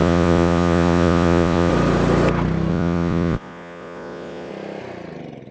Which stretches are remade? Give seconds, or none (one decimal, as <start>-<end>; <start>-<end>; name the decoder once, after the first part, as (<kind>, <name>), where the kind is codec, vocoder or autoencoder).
0.0-1.7 (vocoder, Vocos); 2.7-4.5